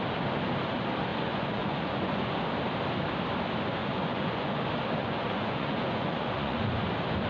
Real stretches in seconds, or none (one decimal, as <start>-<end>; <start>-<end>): 0.0-1.1; 2.4-3.8; 4.6-5.0; 6.7-7.3

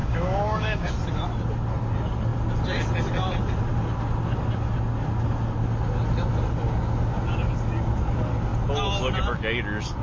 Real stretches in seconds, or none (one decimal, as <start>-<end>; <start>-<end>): 0.9-10.0

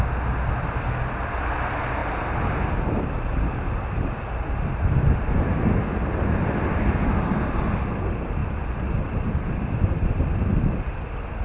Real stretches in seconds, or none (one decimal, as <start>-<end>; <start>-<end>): 0.0-11.4